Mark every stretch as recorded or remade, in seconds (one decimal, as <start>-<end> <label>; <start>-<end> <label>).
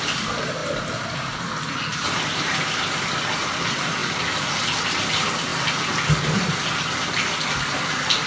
0.0-0.6 recorded; 0.6-1.5 remade; 1.5-1.9 recorded; 1.9-3.0 remade; 3.0-8.3 recorded